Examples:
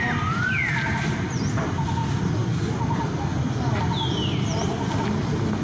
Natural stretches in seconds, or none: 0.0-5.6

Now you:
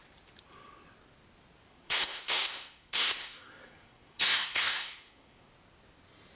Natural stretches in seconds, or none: 0.0-1.7; 5.5-6.4

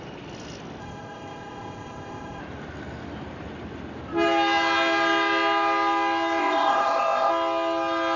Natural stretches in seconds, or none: 0.0-0.8; 2.4-6.4; 7.3-8.2

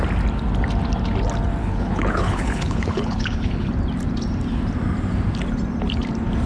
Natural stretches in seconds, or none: 0.0-1.6; 3.7-6.5